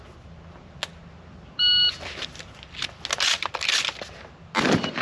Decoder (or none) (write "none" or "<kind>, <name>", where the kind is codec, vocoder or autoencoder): none